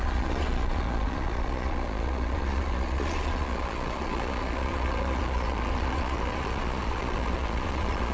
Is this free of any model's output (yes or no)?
no